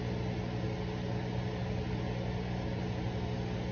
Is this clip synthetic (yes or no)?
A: no